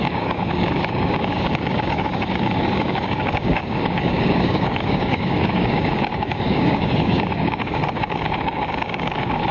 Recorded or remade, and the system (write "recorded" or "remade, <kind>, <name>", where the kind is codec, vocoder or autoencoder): remade, codec, DAC